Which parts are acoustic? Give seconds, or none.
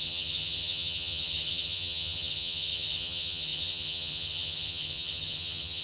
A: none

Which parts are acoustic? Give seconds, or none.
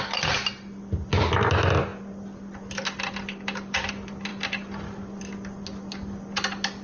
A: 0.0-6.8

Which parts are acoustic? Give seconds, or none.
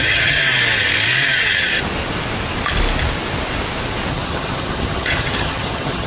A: 0.4-4.1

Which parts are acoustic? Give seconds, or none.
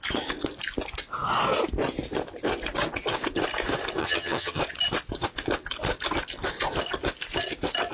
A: 0.0-4.0; 4.6-7.9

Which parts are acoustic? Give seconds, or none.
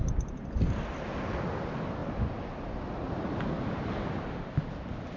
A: 0.0-5.2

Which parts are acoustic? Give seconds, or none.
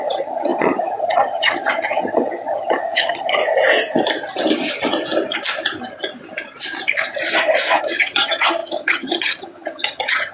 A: 3.4-7.8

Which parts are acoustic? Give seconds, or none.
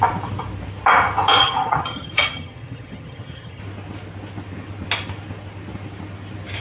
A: 0.0-1.4; 3.6-6.6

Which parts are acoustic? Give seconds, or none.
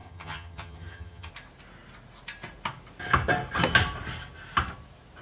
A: 1.3-5.2